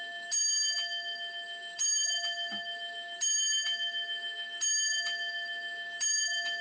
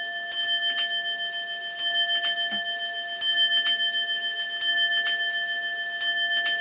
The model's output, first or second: first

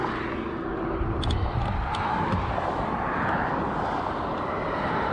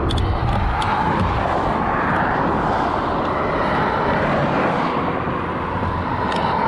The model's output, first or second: first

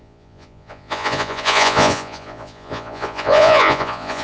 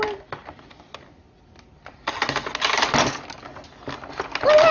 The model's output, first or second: first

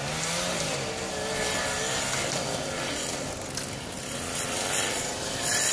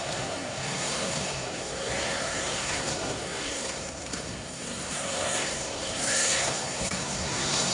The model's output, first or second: second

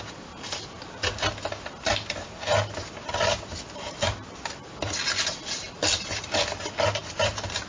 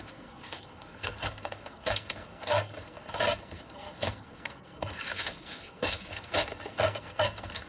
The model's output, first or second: second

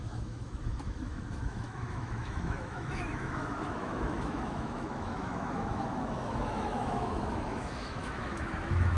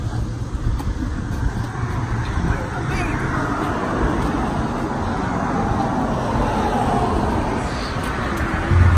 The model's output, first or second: first